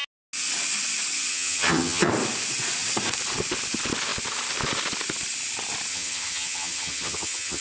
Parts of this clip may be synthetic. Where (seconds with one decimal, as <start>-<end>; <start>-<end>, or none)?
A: 1.3-2.1; 5.9-7.6